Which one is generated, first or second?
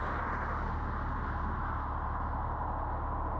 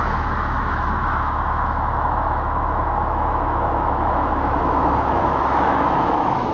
second